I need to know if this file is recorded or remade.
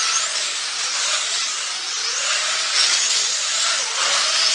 recorded